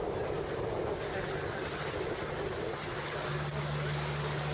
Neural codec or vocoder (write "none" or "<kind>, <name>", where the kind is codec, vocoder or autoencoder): none